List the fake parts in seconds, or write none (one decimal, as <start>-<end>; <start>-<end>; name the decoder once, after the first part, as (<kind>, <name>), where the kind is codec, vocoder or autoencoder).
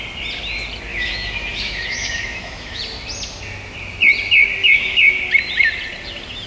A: 0.9-2.8 (autoencoder, DAC-VAE); 4.6-5.2